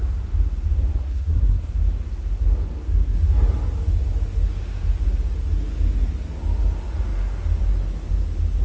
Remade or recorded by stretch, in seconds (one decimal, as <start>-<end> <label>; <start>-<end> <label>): 0.0-0.9 recorded; 0.9-1.7 remade; 1.7-8.6 recorded